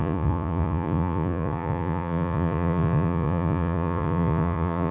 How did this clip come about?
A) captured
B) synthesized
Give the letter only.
B